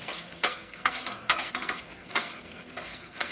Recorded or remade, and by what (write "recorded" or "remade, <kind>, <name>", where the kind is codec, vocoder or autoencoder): remade, codec, SNAC